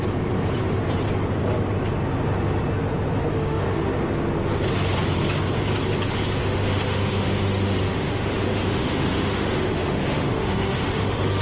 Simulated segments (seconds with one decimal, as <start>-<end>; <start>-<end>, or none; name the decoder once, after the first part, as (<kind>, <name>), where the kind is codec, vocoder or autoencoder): 3.3-3.9 (autoencoder, DAC-VAE); 6.4-11.4